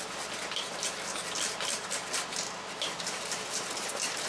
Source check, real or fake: real